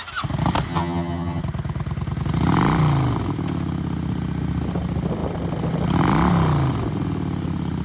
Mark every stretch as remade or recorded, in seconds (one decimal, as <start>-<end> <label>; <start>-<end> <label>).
0.0-0.7 recorded; 0.7-1.4 remade; 1.4-7.8 recorded